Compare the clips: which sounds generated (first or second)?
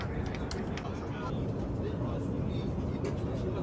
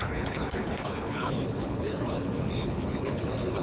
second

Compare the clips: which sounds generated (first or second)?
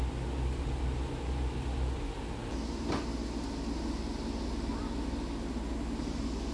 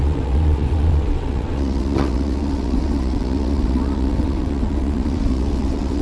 second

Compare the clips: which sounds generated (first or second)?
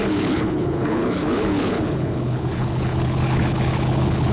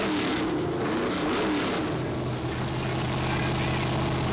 first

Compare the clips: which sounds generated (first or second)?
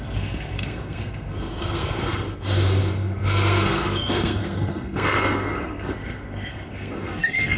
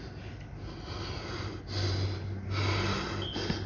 first